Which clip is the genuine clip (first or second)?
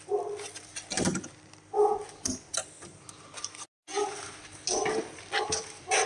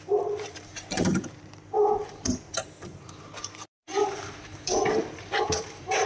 first